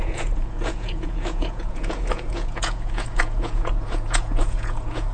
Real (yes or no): no